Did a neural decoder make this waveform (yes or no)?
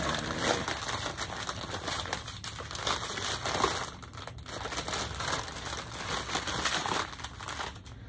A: no